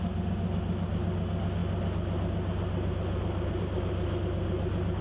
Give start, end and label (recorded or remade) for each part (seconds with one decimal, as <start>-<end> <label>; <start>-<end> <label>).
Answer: 0.0-5.0 recorded